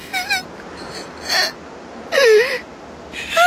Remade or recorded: recorded